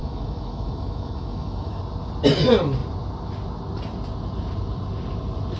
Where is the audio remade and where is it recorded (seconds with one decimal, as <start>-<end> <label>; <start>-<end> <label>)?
0.0-1.8 remade; 1.8-5.6 recorded